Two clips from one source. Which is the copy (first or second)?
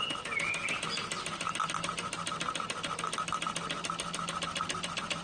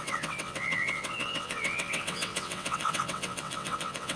second